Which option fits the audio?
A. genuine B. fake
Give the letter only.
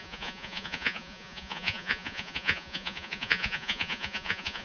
B